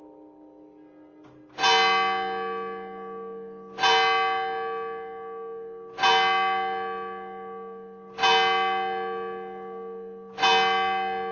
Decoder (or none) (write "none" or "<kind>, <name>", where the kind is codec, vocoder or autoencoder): none